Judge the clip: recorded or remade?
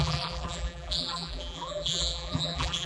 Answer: remade